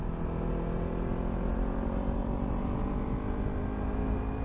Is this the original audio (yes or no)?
yes